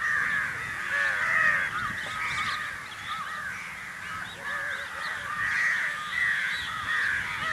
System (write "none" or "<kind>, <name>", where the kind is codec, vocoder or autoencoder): none